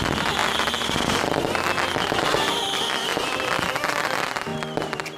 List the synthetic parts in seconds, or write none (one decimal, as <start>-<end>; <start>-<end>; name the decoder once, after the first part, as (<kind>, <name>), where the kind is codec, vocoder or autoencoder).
0.0-5.2 (vocoder, BigVGAN v2)